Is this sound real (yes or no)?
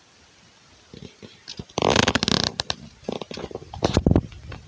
yes